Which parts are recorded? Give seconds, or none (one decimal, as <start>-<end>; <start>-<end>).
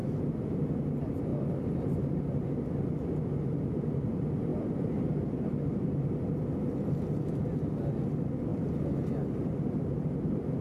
0.8-4.5; 7.3-8.5; 10.1-10.6